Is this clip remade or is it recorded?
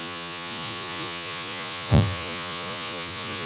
remade